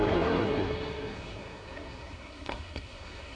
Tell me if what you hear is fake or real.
fake